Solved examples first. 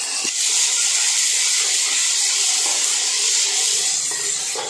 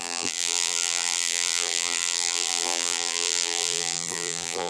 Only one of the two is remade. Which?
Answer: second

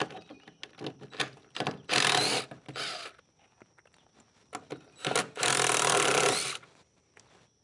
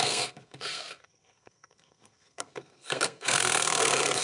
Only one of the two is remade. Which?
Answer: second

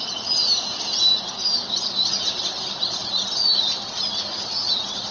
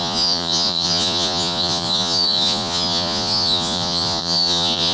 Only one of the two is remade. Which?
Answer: second